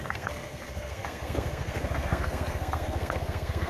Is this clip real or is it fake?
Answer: fake